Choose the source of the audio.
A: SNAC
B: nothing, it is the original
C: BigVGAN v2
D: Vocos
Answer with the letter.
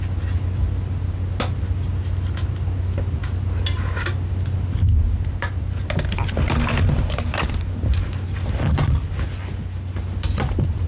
B